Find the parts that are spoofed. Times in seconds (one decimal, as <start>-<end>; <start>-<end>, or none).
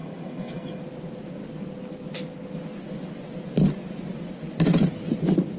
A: 0.0-0.8